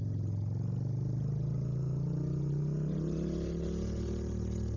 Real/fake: real